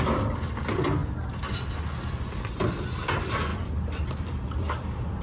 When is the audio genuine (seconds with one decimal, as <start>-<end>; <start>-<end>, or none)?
1.0-2.1